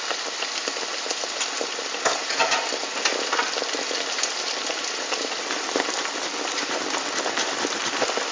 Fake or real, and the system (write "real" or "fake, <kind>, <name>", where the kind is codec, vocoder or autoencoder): real